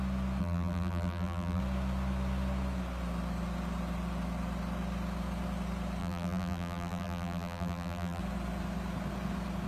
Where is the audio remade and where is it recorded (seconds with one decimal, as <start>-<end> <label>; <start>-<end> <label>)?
0.0-0.4 recorded; 0.4-1.6 remade; 1.6-6.0 recorded; 6.0-8.2 remade; 8.2-9.7 recorded